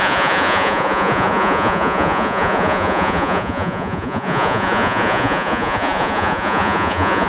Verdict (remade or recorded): remade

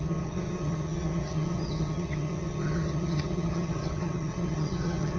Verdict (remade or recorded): remade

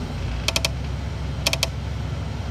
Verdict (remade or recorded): recorded